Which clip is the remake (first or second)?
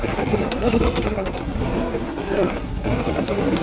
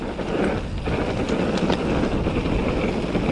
first